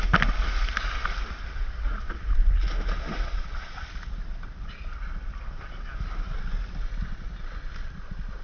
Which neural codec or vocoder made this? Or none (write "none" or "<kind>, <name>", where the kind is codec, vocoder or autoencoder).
none